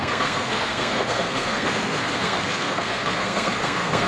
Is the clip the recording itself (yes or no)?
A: no